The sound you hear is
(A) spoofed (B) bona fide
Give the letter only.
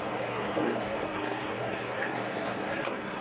A